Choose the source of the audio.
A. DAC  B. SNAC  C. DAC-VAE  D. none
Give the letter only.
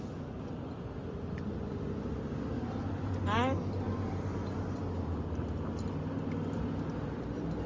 D